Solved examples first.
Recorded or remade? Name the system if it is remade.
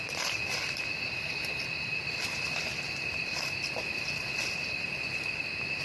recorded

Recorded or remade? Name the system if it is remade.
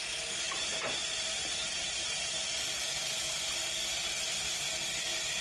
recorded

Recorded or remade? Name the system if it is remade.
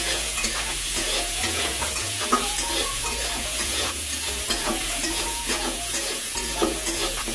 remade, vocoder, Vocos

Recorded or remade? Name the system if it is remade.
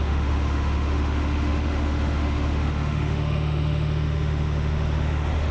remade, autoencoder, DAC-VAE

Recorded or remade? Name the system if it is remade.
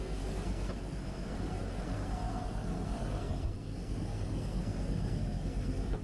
remade, codec, SNAC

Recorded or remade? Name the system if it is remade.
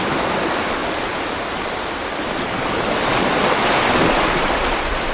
recorded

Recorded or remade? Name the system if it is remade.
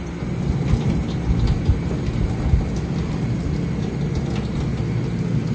recorded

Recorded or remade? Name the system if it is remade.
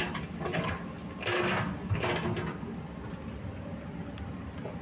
recorded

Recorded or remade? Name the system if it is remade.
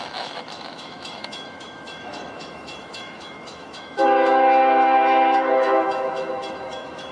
remade, autoencoder, DAC-VAE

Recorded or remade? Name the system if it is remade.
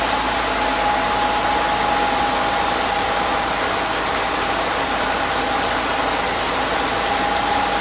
recorded